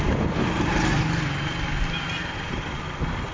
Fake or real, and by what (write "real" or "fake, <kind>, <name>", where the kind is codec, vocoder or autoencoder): real